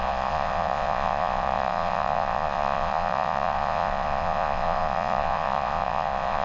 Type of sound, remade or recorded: remade